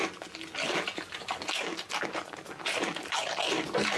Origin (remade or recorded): recorded